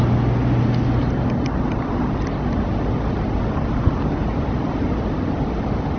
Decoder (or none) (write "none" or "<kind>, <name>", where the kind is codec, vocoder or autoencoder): none